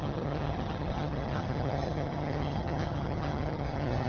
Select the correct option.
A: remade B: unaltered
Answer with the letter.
A